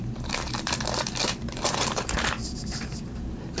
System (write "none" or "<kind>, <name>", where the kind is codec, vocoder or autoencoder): vocoder, BigVGAN v2